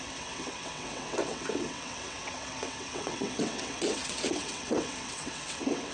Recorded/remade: remade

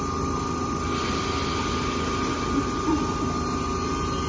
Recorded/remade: recorded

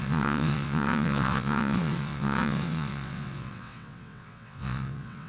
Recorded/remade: remade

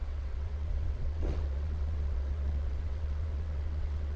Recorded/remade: remade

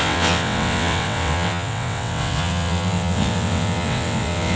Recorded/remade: remade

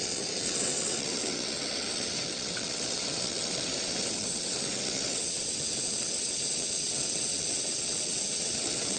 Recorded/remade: remade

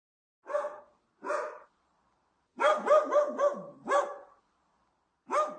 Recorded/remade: recorded